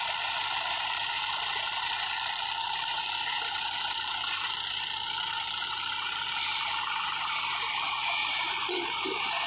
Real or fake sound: fake